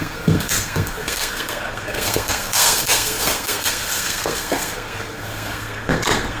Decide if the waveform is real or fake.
fake